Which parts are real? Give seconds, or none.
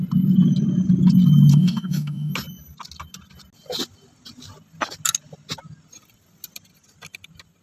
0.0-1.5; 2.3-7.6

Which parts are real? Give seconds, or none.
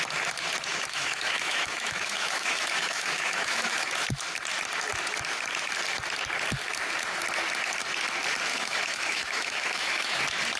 0.0-0.7; 3.9-8.5; 10.2-10.6